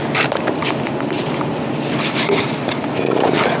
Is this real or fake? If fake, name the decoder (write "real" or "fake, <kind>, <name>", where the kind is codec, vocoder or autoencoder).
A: real